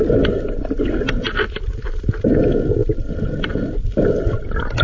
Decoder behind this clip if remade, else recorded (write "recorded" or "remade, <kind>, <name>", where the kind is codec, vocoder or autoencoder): recorded